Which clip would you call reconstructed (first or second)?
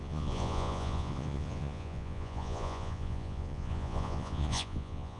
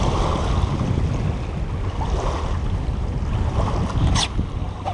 first